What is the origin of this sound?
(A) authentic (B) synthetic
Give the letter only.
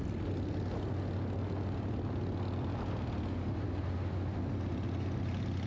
A